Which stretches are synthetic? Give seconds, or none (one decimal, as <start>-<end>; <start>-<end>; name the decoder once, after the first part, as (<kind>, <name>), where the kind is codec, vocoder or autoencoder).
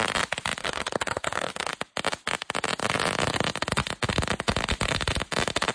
0.6-1.7 (codec, SNAC)